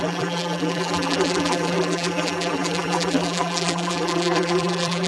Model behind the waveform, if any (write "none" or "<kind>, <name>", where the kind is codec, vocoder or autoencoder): vocoder, BigVGAN v2